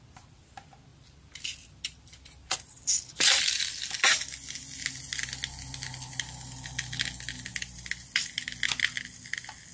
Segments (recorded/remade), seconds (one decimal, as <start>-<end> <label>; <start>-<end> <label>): 0.0-0.9 recorded; 0.9-2.8 remade; 2.8-7.5 recorded; 7.5-8.3 remade; 8.3-9.7 recorded